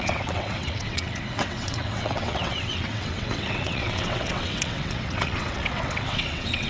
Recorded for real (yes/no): no